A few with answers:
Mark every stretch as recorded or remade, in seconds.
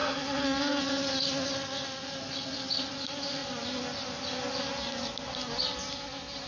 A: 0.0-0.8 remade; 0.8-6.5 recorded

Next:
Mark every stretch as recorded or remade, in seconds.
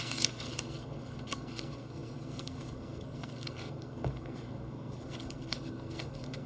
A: 0.0-6.5 remade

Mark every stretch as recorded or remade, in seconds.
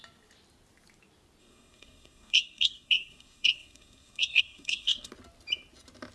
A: 0.0-1.4 recorded; 1.4-5.1 remade; 5.1-6.1 recorded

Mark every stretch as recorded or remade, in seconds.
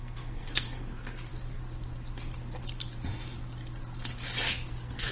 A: 0.0-1.3 remade; 1.3-4.4 recorded; 4.4-5.1 remade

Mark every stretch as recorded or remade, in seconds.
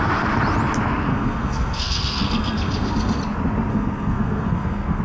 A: 0.0-1.1 recorded; 1.1-3.2 remade; 3.2-3.7 recorded; 3.7-5.0 remade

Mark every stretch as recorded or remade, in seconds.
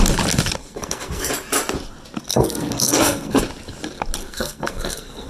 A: 0.0-0.6 recorded; 0.6-1.3 remade; 1.3-2.3 recorded; 2.3-3.4 remade; 3.4-4.2 recorded; 4.2-5.3 remade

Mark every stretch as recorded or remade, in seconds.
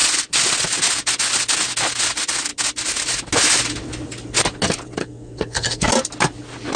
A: 0.0-5.0 recorded; 5.0-5.9 remade; 5.9-6.8 recorded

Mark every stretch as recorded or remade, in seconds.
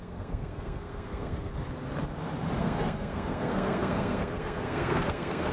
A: 0.0-1.5 remade; 1.5-2.6 recorded; 2.6-5.5 remade